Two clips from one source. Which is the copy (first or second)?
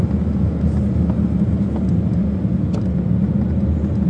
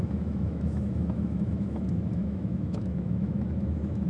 second